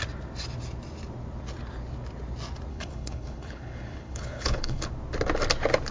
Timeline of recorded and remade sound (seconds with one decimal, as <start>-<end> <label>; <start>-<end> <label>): 0.0-2.7 recorded; 2.7-4.9 remade; 4.9-5.9 recorded